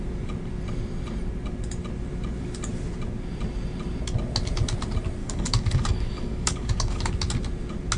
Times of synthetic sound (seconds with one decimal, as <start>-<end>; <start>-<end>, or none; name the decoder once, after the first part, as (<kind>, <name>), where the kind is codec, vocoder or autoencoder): 5.2-7.1 (codec, DAC)